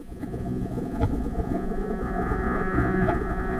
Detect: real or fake fake